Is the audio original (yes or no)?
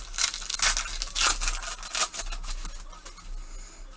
yes